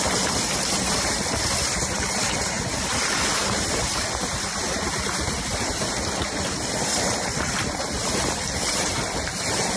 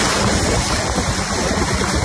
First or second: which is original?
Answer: second